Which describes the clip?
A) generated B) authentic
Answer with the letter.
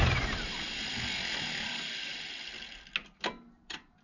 B